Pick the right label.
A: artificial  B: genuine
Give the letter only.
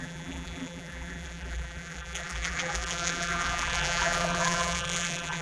A